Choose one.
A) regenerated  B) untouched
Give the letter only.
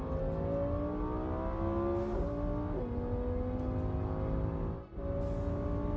B